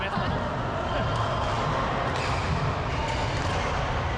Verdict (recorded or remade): recorded